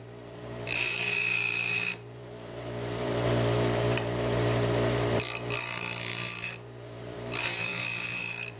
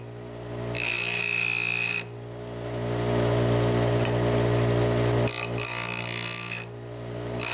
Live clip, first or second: second